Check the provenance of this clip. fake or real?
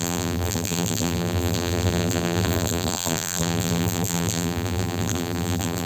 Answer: fake